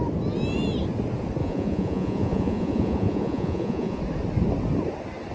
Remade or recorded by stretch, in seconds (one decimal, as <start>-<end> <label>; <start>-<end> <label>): 0.0-1.4 recorded; 1.4-4.0 remade; 4.0-5.3 recorded